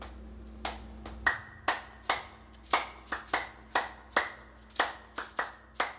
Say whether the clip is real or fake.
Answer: real